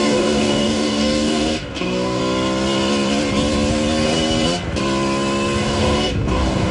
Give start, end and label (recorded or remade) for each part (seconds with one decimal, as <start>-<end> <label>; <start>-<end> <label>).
0.0-2.2 remade; 2.2-5.6 recorded; 5.6-6.7 remade